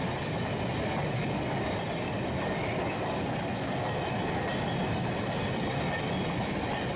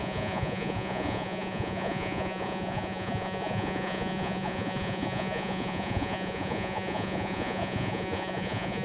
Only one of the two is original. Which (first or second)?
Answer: first